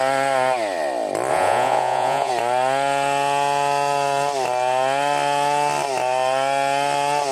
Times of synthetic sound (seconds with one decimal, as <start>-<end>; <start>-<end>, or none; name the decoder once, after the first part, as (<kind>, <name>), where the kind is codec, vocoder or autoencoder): 1.3-2.3 (vocoder, Vocos)